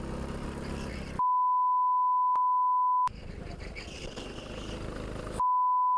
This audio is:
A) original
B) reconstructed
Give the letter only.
A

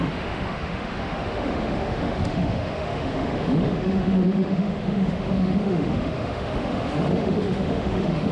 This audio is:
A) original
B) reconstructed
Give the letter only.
B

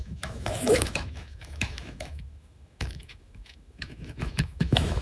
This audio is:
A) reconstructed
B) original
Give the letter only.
A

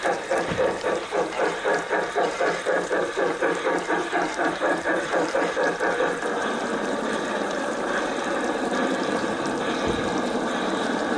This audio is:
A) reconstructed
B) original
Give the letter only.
A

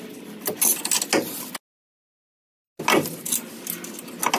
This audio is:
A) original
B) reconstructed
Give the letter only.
A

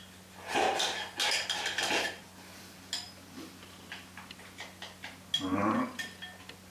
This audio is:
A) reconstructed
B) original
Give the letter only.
B